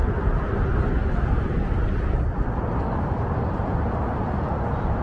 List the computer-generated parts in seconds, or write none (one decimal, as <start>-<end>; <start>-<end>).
none